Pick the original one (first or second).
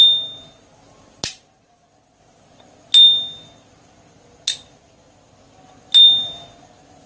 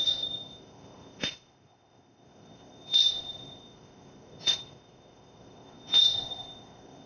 first